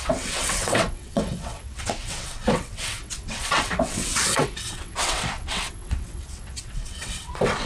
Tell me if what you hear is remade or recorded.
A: remade